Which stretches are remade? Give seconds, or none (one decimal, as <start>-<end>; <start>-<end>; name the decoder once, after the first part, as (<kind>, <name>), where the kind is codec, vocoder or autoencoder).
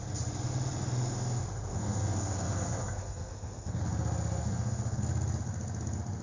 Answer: 1.7-3.8 (codec, SNAC); 4.4-5.0